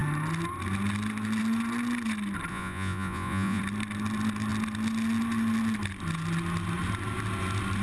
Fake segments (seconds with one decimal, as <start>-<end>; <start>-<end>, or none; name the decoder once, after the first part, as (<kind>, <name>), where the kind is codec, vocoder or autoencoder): 2.5-3.6 (vocoder, Vocos)